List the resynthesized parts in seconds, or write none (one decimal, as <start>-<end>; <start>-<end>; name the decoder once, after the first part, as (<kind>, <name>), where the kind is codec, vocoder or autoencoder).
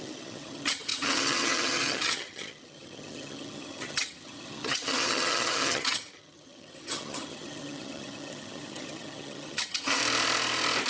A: 0.0-10.0 (vocoder, HiFi-GAN)